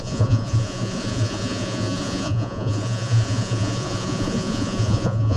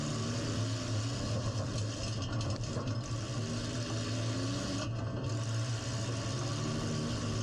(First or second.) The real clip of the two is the second